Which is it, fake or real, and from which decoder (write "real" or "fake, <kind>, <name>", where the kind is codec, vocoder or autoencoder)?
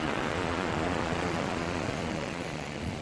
fake, vocoder, Vocos